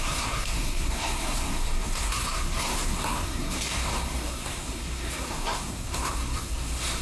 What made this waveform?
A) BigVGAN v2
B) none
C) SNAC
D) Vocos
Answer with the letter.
C